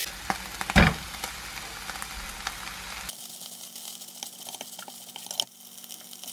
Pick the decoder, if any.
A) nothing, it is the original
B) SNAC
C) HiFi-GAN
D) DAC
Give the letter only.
A